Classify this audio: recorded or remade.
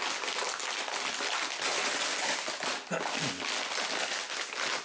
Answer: recorded